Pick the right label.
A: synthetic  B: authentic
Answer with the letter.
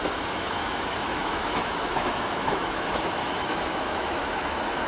A